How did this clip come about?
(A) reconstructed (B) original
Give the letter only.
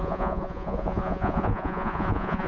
A